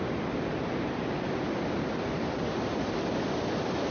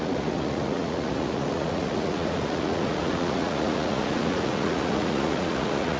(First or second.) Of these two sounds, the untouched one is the first